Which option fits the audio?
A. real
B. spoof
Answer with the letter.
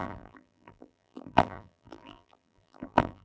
B